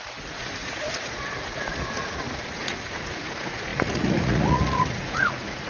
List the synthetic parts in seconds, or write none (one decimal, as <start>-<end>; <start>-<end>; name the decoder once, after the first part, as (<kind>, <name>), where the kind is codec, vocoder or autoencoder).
0.0-5.7 (vocoder, Vocos)